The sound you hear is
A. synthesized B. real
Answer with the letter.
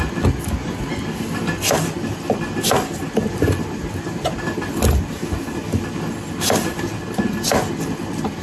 B